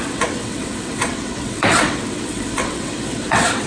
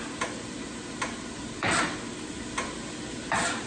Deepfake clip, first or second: first